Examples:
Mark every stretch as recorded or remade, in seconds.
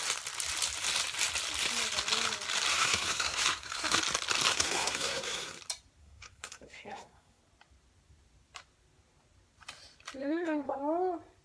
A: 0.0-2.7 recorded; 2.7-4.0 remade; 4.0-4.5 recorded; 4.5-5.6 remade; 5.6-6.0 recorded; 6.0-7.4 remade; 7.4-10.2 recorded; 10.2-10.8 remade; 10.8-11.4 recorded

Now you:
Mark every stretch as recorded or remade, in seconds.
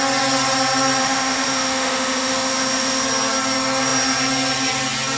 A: 0.0-1.0 recorded; 1.0-3.0 remade; 3.0-5.2 recorded